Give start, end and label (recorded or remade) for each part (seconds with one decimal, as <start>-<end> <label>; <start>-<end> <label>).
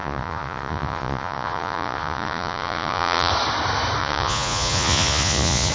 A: 0.0-3.3 remade; 3.3-4.0 recorded; 4.0-5.7 remade